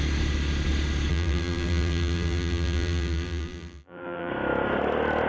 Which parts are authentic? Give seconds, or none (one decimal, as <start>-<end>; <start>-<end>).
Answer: 0.0-1.1; 4.3-5.3